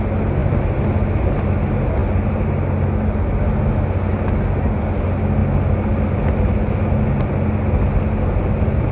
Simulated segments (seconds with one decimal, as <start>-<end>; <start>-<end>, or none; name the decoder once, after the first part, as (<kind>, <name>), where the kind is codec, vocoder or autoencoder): none